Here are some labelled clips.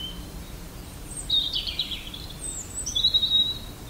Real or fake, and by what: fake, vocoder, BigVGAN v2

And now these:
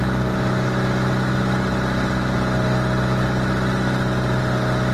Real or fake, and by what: real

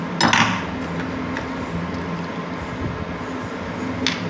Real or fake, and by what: real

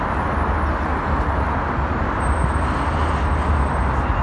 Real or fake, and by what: real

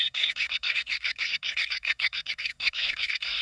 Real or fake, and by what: fake, codec, SNAC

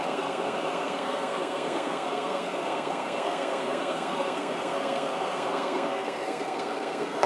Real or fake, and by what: fake, codec, SNAC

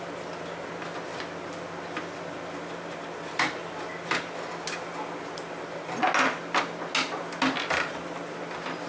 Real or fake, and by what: real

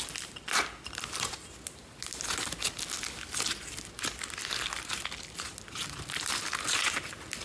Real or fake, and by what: real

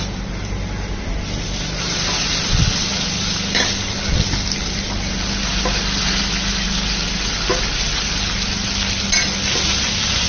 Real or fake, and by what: real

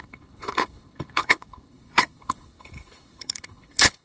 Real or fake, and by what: fake, codec, HILCodec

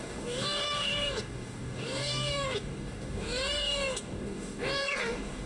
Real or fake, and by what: fake, codec, DAC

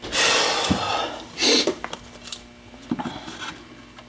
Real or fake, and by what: real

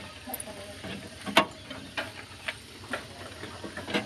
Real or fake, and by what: real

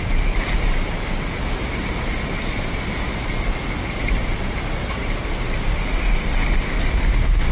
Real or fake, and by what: real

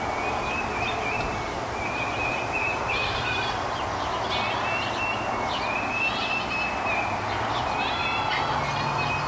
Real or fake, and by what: real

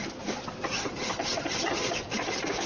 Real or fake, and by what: real